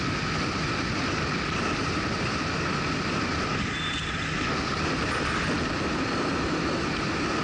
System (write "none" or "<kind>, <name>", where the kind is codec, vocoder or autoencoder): none